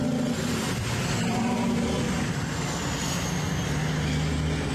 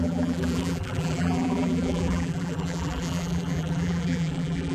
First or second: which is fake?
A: second